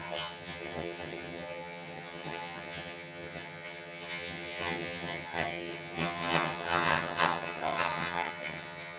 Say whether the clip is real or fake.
fake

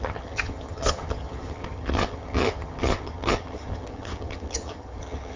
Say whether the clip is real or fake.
fake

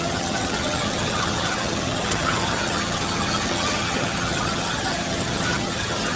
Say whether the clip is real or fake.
fake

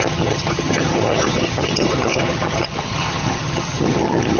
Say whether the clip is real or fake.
fake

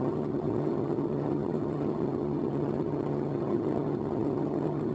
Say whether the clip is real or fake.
fake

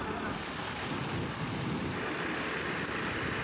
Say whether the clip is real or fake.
real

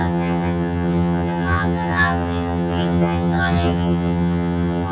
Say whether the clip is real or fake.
fake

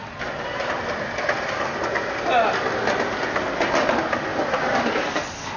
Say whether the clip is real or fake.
real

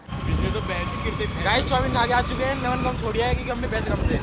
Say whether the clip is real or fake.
real